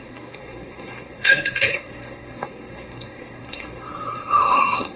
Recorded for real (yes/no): no